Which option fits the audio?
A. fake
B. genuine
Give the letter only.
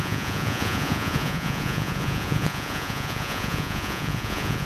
A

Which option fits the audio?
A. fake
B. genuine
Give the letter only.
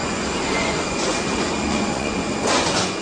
A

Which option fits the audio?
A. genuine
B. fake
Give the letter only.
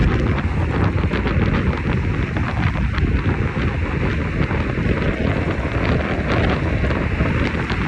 A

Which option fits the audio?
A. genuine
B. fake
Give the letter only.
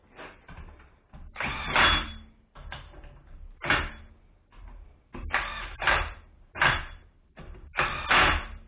A